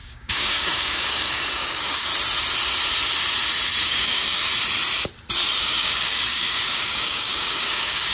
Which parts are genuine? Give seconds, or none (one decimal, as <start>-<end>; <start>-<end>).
2.1-3.8; 4.5-5.6